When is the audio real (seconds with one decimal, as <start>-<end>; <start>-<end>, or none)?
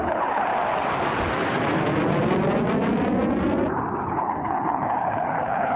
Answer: 0.5-4.0